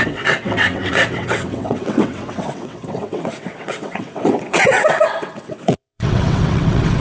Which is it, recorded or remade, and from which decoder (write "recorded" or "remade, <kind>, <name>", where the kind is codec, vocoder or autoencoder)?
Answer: remade, vocoder, WaveNeXt